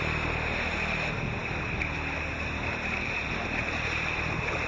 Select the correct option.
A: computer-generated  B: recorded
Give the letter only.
B